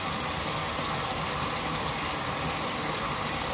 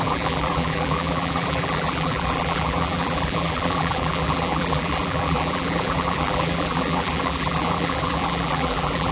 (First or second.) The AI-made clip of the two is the second